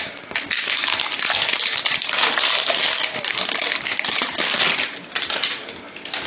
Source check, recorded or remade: recorded